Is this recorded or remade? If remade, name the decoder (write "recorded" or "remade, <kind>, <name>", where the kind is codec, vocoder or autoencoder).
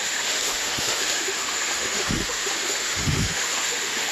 remade, autoencoder, DAC-VAE